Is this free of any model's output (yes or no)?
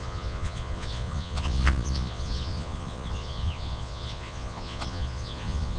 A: no